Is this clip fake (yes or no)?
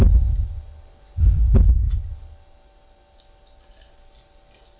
no